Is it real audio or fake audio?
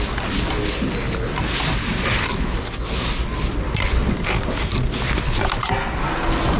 real